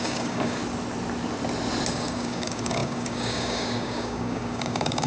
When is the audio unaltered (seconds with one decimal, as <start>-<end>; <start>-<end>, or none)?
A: 0.6-1.9